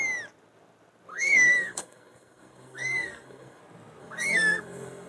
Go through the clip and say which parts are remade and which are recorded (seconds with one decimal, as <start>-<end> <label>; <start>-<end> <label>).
0.0-1.1 recorded; 1.1-3.6 remade; 3.6-4.0 recorded; 4.0-5.1 remade